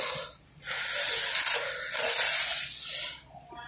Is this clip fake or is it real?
real